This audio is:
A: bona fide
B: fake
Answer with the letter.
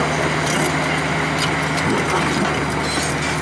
A